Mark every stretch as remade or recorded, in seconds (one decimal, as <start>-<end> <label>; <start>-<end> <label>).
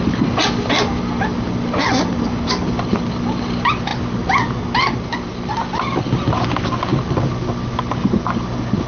0.0-8.9 recorded